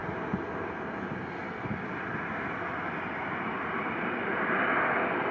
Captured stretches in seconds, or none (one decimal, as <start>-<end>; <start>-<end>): 0.0-1.4; 4.3-5.3